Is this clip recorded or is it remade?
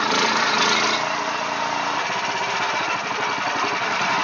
recorded